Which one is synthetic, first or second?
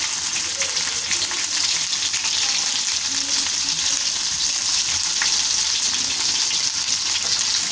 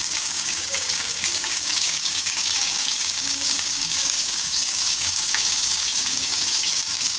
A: second